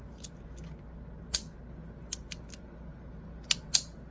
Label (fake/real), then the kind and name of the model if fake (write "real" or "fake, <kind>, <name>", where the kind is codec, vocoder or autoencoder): real